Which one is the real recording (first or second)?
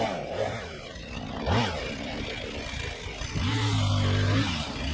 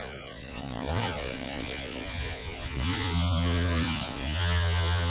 first